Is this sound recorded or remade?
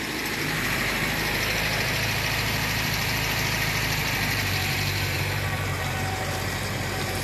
remade